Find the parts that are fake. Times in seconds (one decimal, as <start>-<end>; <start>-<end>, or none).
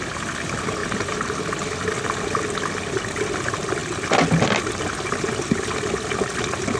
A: 0.8-1.4